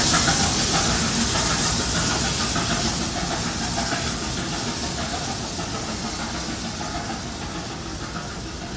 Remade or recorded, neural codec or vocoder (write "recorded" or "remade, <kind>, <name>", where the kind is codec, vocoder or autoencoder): recorded